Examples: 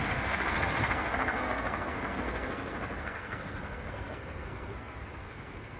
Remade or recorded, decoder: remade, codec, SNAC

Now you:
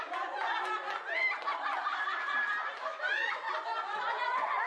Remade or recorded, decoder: recorded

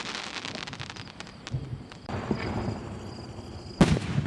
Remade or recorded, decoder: recorded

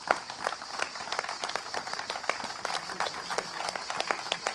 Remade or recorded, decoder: recorded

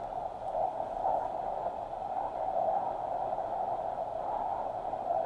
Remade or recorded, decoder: recorded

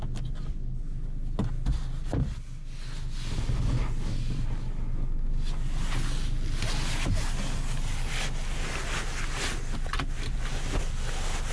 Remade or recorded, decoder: recorded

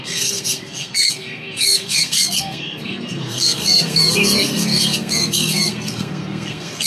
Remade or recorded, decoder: remade, codec, SNAC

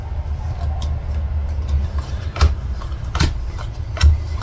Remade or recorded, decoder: recorded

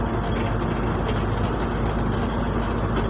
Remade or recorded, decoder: recorded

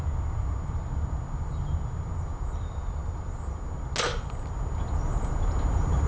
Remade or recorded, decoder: recorded